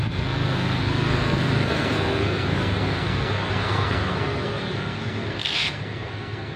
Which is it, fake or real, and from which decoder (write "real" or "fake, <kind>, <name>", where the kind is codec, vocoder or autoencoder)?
fake, codec, SNAC